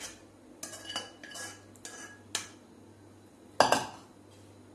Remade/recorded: recorded